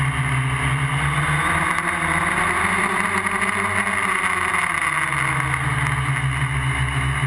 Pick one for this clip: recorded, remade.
recorded